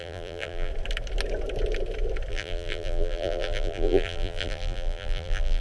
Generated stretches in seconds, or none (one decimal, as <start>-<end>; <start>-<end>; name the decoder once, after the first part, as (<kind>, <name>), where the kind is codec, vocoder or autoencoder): 0.0-0.7 (vocoder, BigVGAN v2); 2.3-5.6